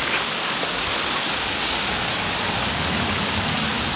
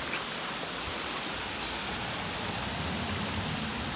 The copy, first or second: first